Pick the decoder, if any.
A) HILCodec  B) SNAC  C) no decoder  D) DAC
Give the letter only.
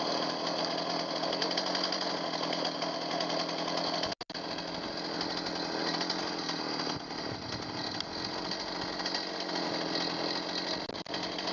C